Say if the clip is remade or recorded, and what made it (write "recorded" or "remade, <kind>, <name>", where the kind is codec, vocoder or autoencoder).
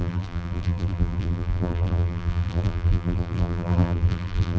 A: remade, vocoder, BigVGAN v2